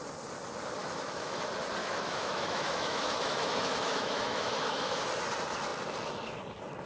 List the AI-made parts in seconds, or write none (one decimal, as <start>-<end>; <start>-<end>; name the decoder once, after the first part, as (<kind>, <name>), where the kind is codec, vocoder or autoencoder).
0.8-1.4 (autoencoder, DAC-VAE); 1.8-5.0